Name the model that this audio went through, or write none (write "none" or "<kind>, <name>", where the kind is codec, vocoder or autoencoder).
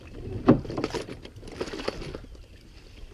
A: none